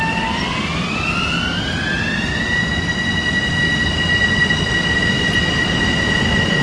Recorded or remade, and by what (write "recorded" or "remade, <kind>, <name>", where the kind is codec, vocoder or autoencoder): recorded